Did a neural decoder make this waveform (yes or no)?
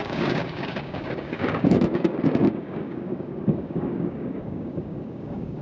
yes